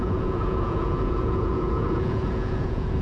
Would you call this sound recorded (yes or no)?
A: no